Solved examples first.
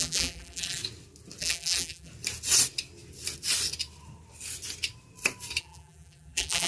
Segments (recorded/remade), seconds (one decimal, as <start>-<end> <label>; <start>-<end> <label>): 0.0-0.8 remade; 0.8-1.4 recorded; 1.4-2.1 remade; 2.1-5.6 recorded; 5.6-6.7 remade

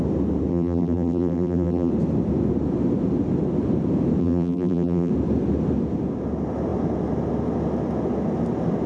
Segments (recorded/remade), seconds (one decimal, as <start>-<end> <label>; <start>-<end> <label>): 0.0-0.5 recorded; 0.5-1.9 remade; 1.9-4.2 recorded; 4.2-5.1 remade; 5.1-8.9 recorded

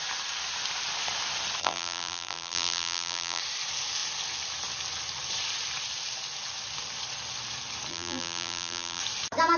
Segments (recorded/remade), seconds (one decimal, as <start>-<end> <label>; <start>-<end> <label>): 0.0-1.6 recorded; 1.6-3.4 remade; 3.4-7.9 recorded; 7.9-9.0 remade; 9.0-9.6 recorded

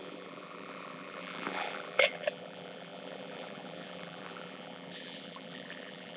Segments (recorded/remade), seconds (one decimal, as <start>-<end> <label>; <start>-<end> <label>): 0.0-6.2 remade

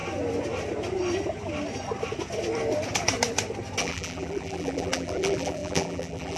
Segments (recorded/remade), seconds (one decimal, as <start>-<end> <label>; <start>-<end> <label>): 0.0-3.8 recorded; 3.8-6.4 remade